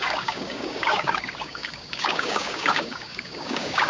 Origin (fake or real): fake